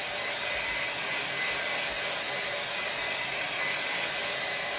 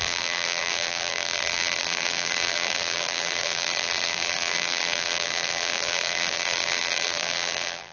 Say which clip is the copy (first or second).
second